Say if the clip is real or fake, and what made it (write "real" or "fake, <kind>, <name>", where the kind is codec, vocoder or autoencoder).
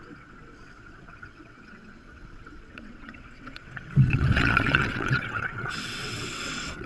fake, vocoder, WaveNeXt